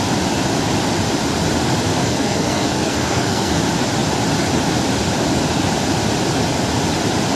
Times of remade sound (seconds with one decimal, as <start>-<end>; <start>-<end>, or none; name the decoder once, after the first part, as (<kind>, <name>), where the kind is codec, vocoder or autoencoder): 1.9-3.6 (codec, SNAC)